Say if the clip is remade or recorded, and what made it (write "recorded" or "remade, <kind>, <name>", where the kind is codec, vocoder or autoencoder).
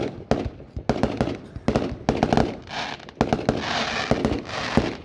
recorded